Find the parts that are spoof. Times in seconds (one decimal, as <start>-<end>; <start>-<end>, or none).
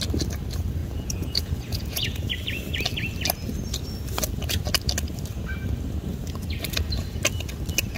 0.8-2.2